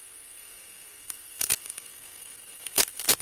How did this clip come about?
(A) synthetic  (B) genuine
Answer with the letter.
A